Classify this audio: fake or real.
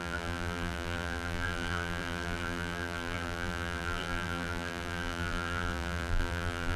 fake